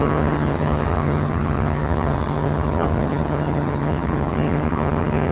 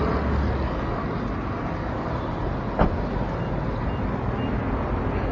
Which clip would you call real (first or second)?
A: second